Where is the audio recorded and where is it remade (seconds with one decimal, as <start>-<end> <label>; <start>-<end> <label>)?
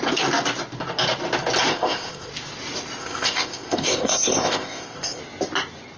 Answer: 0.0-1.7 recorded; 1.7-2.3 remade; 2.3-3.0 recorded; 3.0-5.2 remade; 5.2-6.0 recorded